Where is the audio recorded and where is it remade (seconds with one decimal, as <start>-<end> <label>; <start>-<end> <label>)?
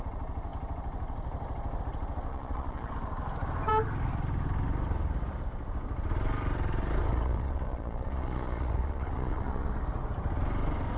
0.0-2.3 recorded; 2.3-2.9 remade; 2.9-7.1 recorded; 7.1-9.7 remade; 9.7-11.0 recorded